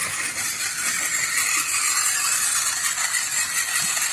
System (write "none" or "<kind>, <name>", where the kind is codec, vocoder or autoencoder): none